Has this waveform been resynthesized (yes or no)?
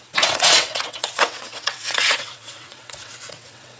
yes